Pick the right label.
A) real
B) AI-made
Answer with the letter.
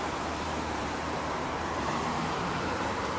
B